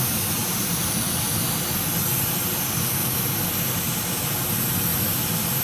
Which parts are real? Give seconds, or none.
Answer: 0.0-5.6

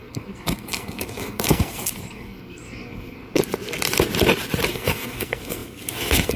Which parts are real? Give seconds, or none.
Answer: 3.4-4.7

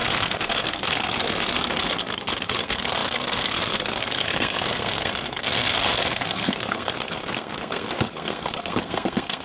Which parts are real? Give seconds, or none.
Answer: none